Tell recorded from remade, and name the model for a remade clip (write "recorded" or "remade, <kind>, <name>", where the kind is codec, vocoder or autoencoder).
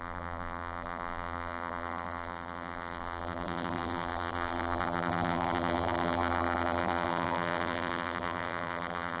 remade, vocoder, BigVGAN v2